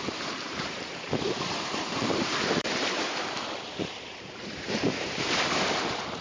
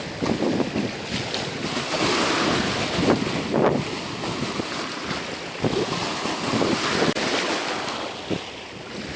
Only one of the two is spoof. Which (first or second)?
first